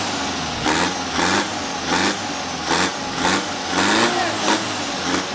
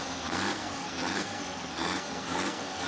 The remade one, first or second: second